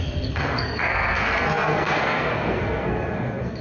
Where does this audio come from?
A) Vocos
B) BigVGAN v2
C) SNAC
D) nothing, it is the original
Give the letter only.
C